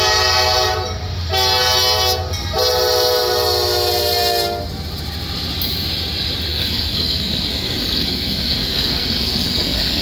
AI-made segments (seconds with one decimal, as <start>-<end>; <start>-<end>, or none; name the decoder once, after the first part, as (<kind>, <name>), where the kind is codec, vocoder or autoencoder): 6.5-10.0 (codec, SNAC)

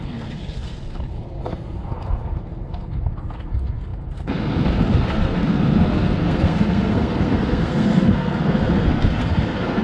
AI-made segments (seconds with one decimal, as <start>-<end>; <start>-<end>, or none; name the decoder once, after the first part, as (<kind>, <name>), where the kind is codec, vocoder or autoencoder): 0.0-9.8 (codec, SNAC)

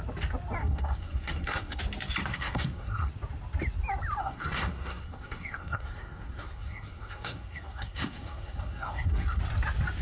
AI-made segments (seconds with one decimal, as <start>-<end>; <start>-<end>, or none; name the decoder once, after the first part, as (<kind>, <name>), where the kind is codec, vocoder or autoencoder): 0.6-1.8 (codec, SNAC); 2.3-3.1; 4.2-9.4

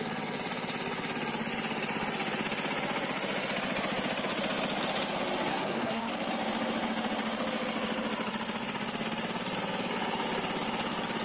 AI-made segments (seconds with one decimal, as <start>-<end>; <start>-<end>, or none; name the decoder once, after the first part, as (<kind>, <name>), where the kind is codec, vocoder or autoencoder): 5.5-6.1 (codec, SNAC)

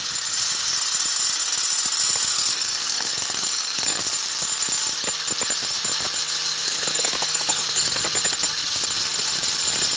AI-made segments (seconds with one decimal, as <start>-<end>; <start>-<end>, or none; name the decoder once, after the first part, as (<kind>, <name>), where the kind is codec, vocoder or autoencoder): 2.3-4.0 (codec, SNAC); 6.6-8.0

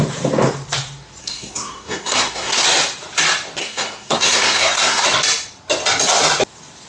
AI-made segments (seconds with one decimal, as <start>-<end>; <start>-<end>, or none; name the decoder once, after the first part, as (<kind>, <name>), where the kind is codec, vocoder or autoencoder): 1.2-2.6 (codec, SNAC); 3.6-5.0